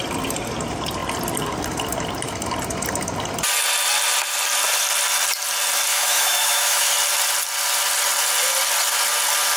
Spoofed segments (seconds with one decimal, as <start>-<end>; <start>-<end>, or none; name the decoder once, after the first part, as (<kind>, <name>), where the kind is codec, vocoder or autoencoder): 5.9-6.9 (autoencoder, DAC-VAE)